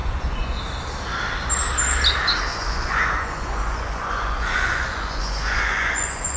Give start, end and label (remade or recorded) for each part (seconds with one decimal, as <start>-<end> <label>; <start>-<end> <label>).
0.0-0.6 remade; 0.6-2.5 recorded; 2.5-6.4 remade